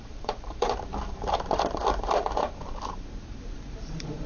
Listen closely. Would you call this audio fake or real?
fake